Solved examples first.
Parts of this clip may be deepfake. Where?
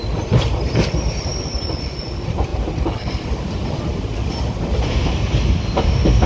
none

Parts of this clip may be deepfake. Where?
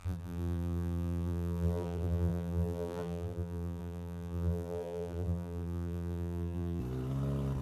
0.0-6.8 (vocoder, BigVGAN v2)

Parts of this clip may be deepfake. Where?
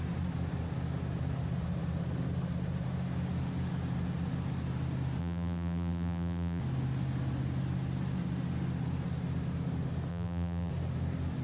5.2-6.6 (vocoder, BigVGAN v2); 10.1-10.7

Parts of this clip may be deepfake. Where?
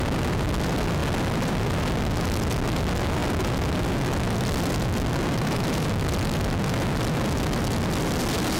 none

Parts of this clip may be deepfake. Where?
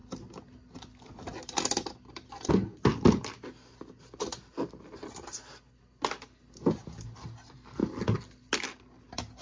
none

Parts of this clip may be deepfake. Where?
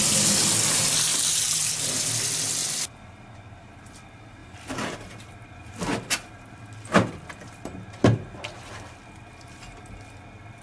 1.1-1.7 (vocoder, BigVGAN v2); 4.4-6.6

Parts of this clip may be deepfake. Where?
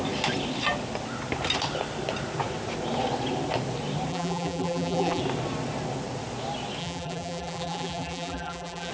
4.1-5.2 (vocoder, BigVGAN v2); 6.8-8.9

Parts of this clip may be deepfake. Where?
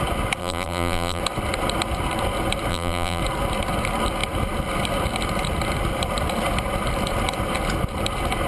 0.4-1.2 (vocoder, BigVGAN v2); 2.7-3.2